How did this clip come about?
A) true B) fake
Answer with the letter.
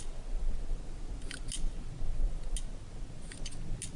A